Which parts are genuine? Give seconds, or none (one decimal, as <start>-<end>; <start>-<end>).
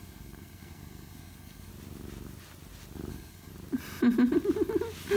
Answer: 1.7-3.1; 3.5-5.2